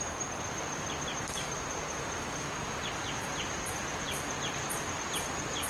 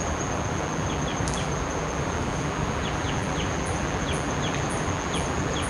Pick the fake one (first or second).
second